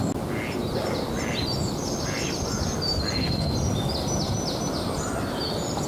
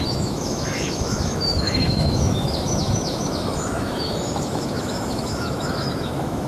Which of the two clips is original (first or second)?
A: first